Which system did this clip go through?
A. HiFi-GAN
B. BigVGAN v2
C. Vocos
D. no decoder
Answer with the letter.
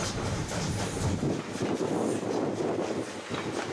D